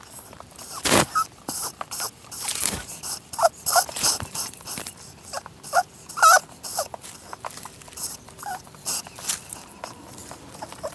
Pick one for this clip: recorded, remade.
remade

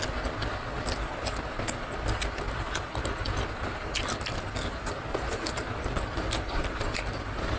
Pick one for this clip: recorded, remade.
recorded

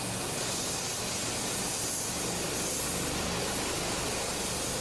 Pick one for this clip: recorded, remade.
recorded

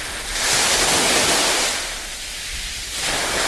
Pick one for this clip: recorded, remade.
recorded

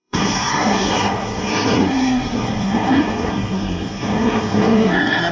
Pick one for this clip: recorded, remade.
remade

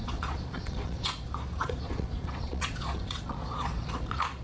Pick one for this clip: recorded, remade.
remade